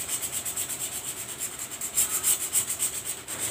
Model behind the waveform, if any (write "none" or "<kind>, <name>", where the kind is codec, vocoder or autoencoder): vocoder, BigVGAN v2